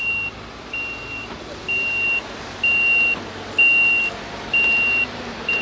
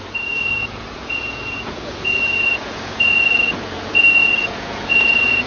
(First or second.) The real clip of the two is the first